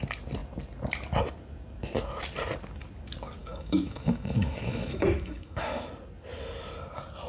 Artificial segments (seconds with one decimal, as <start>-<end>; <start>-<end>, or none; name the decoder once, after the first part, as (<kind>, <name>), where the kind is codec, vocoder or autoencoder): 3.4-5.9 (autoencoder, DAC-VAE)